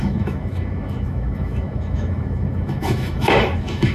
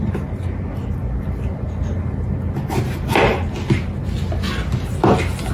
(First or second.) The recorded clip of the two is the second